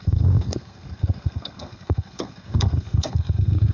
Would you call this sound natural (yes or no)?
no